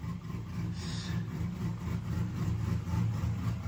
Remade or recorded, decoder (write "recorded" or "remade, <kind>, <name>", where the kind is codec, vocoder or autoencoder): recorded